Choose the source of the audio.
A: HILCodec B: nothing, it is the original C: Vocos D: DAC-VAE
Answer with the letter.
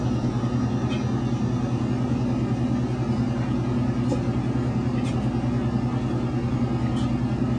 B